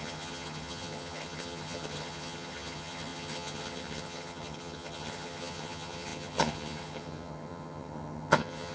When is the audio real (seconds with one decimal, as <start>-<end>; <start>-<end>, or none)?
none